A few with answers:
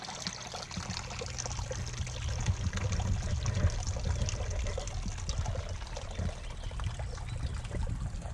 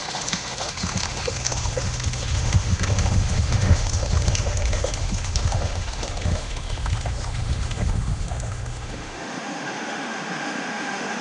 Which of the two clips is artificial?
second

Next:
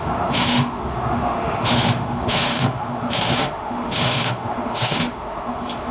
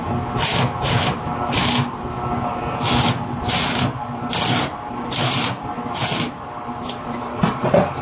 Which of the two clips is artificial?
first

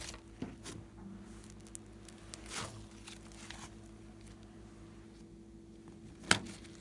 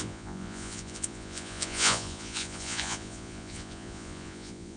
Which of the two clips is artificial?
second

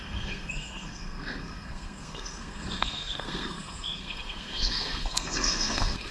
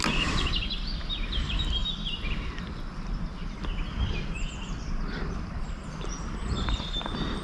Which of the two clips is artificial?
first